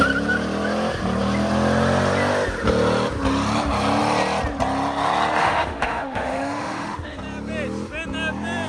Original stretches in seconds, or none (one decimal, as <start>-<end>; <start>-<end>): 0.0-5.4; 7.2-8.7